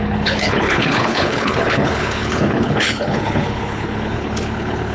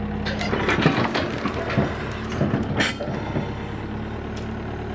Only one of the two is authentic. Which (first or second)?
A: second